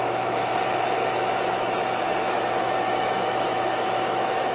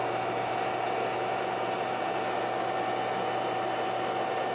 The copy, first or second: first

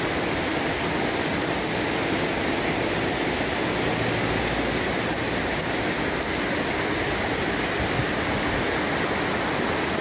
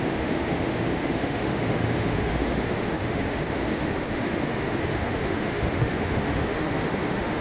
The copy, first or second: second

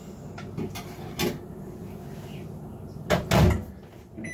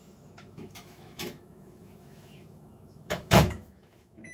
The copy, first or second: second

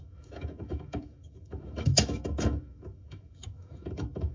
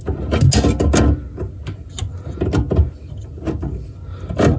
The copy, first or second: first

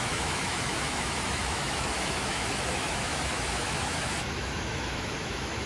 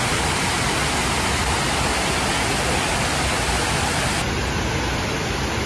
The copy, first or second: first